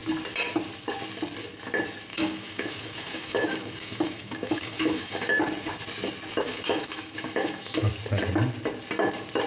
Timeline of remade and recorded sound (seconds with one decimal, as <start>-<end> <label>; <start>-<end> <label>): 0.0-2.1 recorded; 2.1-5.4 remade; 5.4-6.3 recorded; 6.3-7.9 remade; 7.9-9.5 recorded